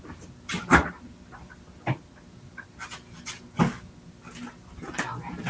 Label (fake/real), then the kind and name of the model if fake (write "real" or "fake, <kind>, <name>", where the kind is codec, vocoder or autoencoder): real